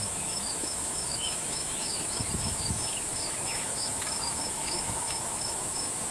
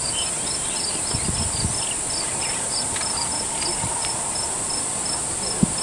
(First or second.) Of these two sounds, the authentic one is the second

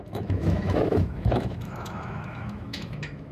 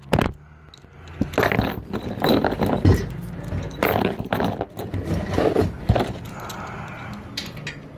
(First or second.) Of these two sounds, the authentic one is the second